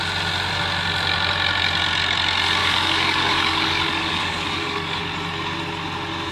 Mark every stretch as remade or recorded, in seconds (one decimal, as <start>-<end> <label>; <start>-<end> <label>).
0.0-2.6 recorded; 2.6-5.0 remade; 5.0-6.3 recorded